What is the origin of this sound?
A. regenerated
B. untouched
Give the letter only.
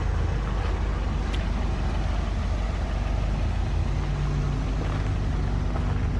B